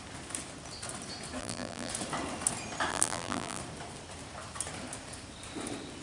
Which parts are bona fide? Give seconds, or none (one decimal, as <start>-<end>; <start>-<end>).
0.0-1.4; 1.9-2.9; 3.6-6.0

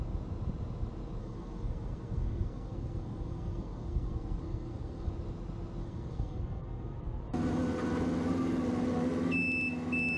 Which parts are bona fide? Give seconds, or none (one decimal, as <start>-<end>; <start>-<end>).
0.0-1.2; 5.1-5.8; 7.2-10.2

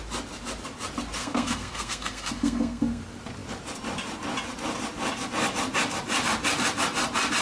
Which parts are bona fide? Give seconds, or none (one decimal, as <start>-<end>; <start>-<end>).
0.0-1.2; 3.0-7.4

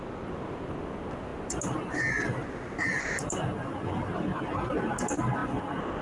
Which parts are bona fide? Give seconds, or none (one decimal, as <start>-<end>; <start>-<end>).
0.0-6.0

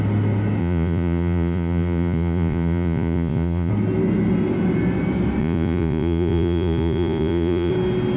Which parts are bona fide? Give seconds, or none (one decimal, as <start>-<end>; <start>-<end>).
0.0-0.6; 3.7-5.4; 7.7-8.2